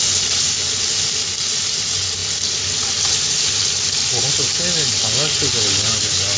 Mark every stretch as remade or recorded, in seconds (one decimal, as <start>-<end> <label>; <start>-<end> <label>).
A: 0.0-2.2 recorded; 2.2-4.3 remade; 4.3-6.4 recorded